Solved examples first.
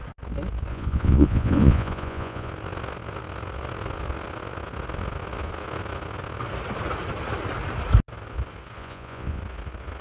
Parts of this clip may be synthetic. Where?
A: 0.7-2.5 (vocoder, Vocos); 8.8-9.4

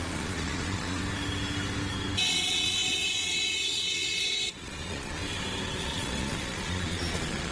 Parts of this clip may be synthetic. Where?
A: 0.0-1.0 (vocoder, Vocos); 2.2-5.2; 5.8-7.5

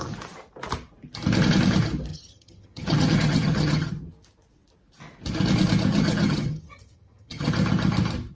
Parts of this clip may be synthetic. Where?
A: 2.1-3.9 (vocoder, HiFi-GAN); 5.9-7.5

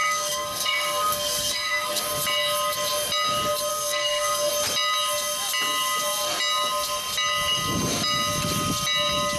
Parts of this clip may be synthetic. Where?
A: 0.0-2.0 (codec, SNAC); 3.7-4.5

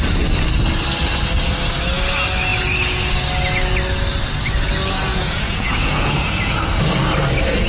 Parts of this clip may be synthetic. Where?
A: 5.1-6.6 (vocoder, Vocos)

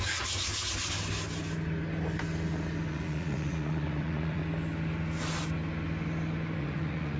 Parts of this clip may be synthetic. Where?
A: 0.0-0.5 (vocoder, Vocos); 2.9-4.4; 6.6-7.2

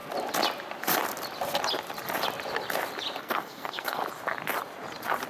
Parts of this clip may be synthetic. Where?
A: 3.2-4.0 (codec, SNAC)